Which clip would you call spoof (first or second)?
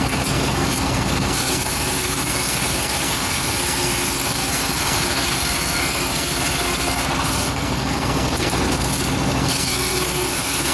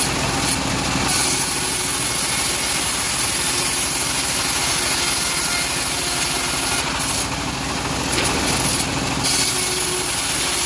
first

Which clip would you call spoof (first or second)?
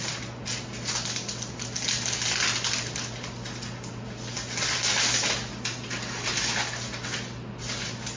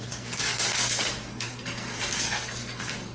second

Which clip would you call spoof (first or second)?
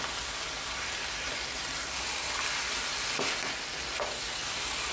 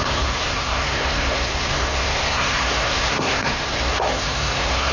second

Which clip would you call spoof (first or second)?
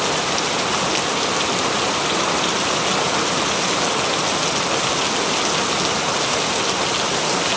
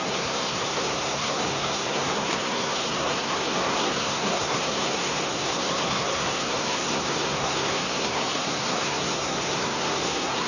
second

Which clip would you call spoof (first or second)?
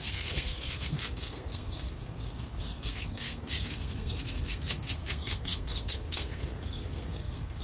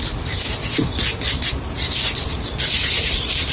first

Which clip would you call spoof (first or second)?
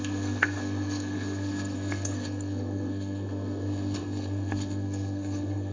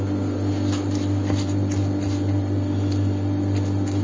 first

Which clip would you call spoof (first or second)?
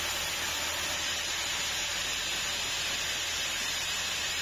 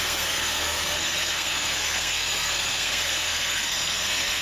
second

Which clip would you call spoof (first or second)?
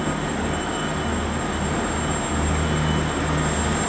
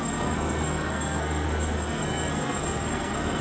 second